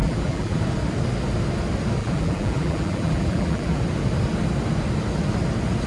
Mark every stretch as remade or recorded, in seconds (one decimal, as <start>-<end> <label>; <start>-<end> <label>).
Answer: 0.0-0.6 remade; 0.6-2.0 recorded; 2.0-3.8 remade; 3.8-5.9 recorded